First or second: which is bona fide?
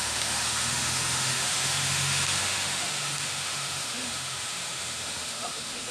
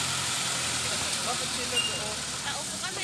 second